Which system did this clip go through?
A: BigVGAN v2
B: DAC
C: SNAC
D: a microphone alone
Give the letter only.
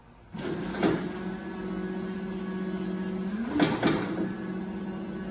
D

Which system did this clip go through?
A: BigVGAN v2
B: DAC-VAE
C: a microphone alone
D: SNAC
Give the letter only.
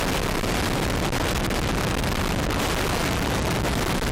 C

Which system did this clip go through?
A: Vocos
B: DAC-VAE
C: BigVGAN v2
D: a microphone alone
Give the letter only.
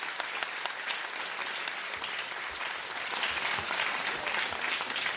D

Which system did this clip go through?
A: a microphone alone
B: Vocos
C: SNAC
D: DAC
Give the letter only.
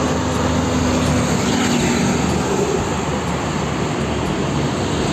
A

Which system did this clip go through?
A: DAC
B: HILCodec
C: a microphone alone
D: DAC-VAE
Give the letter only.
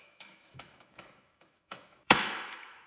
D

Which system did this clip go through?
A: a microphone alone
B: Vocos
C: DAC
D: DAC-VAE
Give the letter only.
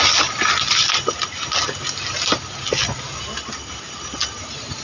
A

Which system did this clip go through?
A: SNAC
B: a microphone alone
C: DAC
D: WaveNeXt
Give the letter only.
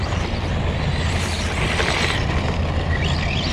B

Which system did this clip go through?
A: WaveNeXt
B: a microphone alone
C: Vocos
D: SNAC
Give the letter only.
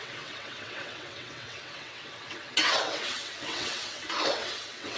A